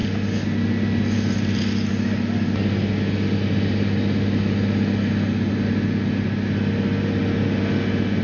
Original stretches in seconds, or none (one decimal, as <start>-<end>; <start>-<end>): 0.0-8.2